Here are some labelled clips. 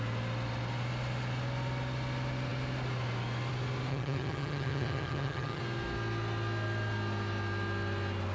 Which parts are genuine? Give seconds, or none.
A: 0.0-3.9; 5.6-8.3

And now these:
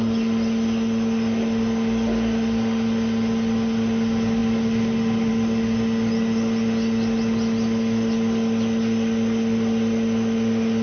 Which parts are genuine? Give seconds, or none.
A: 0.0-10.8

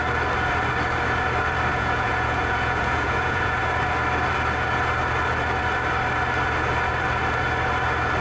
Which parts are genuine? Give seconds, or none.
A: 0.0-1.7; 3.6-8.2

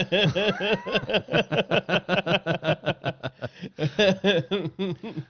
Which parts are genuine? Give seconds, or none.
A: 0.0-5.3

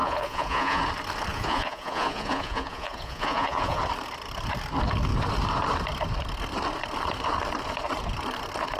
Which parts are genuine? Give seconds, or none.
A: 0.8-1.3; 3.8-8.8

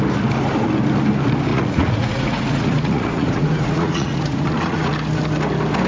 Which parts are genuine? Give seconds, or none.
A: 0.0-1.5; 4.9-5.9

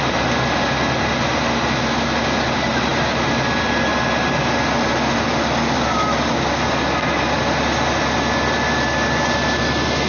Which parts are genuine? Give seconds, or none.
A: 0.0-10.1

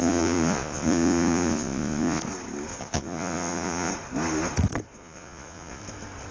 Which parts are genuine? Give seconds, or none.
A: 2.2-2.7; 3.9-4.9; 5.8-6.3